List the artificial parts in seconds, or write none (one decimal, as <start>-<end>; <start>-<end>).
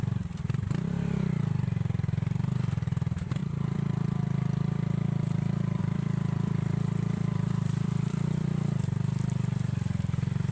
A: 0.0-10.5